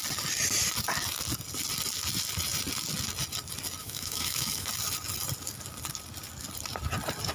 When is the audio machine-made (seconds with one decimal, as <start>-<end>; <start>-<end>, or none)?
3.8-4.7